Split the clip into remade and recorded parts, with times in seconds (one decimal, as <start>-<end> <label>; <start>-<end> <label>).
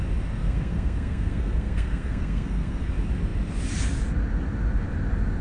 0.0-0.4 recorded; 0.4-2.9 remade; 2.9-5.4 recorded